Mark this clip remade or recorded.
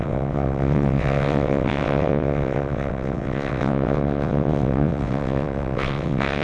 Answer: remade